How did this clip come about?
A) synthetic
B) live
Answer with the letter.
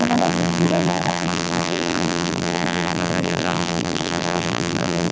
A